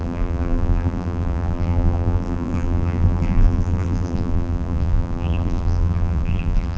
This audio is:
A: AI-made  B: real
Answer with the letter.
A